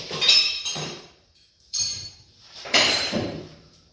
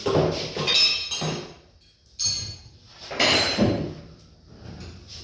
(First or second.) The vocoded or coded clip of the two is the first